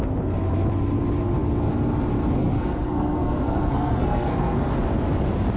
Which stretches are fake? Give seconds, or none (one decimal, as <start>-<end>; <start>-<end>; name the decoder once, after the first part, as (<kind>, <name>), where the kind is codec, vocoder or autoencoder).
2.4-4.7 (codec, SNAC)